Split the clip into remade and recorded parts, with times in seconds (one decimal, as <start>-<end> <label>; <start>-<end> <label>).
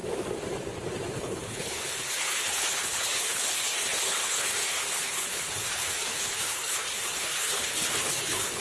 0.0-1.2 recorded; 1.2-8.6 remade